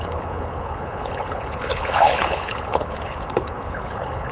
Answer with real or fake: fake